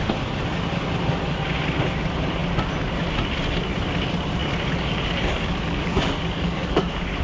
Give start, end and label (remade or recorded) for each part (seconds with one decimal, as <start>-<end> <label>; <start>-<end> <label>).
0.0-4.4 recorded; 4.4-7.2 remade